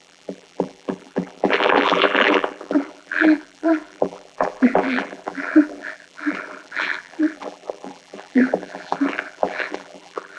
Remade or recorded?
remade